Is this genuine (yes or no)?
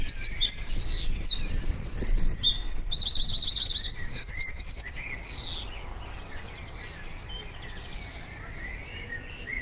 yes